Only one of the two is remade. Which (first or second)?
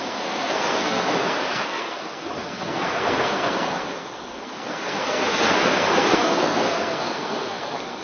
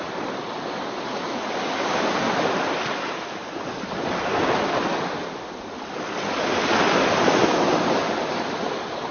first